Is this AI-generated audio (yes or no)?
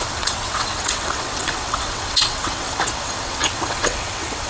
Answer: yes